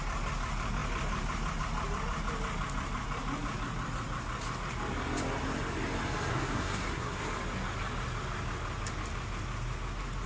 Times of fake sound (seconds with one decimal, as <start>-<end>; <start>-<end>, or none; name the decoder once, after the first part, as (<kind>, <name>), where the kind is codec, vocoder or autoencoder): 6.3-7.2 (codec, SNAC)